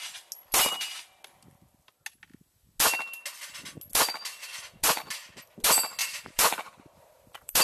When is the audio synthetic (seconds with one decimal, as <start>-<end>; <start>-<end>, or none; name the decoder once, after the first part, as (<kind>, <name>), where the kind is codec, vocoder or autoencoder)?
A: 6.0-7.6 (vocoder, BigVGAN v2)